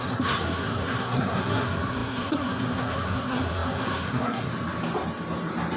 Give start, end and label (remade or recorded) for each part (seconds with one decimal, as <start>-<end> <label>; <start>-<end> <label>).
0.0-4.5 remade; 4.5-5.8 recorded